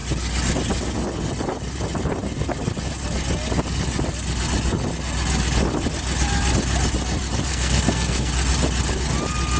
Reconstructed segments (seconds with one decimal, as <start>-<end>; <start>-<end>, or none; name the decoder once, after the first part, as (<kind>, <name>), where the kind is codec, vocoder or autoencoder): 7.5-8.3 (codec, SNAC)